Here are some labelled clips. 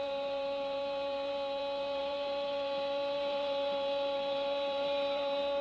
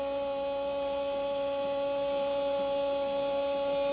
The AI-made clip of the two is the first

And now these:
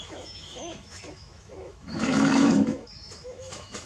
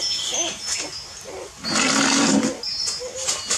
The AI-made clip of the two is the first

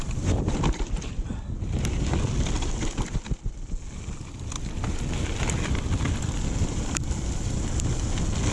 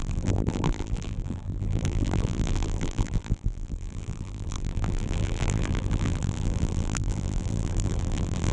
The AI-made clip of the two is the second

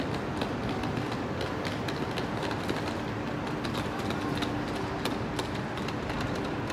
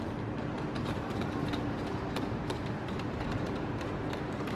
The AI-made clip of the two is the second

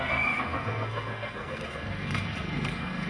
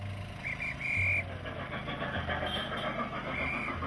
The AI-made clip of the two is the first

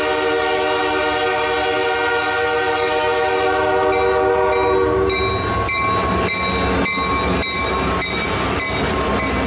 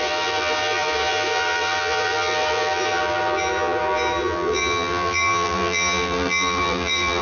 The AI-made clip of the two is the second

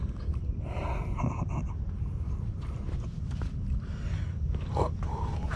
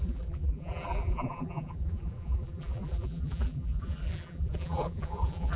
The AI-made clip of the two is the second